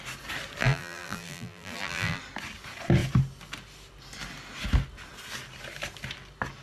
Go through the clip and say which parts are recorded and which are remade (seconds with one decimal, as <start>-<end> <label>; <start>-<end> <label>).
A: 0.0-0.6 recorded; 0.6-2.2 remade; 2.2-6.6 recorded